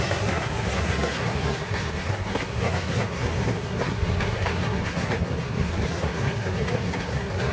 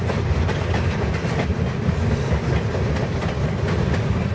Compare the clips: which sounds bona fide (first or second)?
second